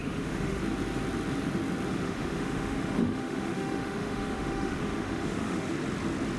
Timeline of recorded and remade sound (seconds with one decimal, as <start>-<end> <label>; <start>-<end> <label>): 0.0-0.6 remade; 0.6-1.9 recorded; 1.9-5.7 remade; 5.7-6.4 recorded